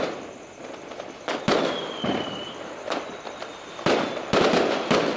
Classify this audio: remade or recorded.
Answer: recorded